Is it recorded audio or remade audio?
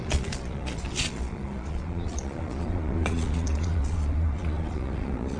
remade